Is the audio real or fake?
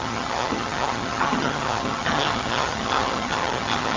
fake